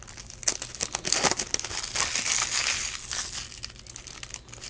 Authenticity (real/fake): real